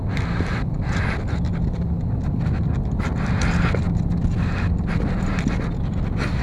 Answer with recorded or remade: recorded